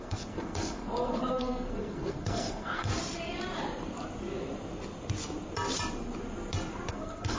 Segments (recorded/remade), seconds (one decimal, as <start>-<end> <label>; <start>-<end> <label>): 0.0-2.9 remade; 2.9-6.9 recorded; 6.9-7.4 remade